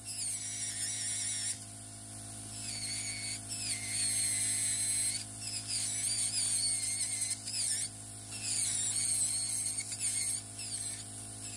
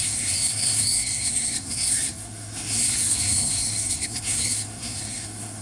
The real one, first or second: first